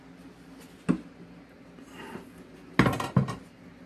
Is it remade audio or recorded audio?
recorded